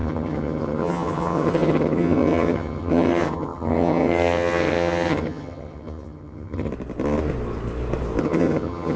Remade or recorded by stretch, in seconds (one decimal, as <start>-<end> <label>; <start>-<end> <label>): 0.0-6.7 remade; 6.7-8.2 recorded; 8.2-9.0 remade